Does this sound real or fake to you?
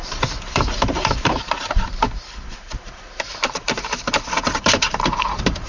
fake